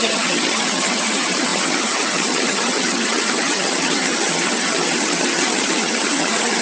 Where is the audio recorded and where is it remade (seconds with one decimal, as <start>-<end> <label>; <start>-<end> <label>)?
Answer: 0.0-6.6 remade